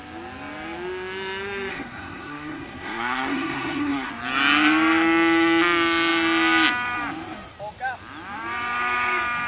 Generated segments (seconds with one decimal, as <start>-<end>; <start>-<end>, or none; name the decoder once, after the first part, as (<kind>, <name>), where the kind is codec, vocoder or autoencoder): 1.7-4.1 (codec, SNAC)